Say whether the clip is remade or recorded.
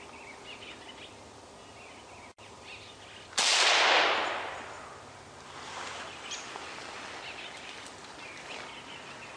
recorded